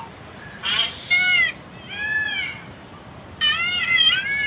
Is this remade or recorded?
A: remade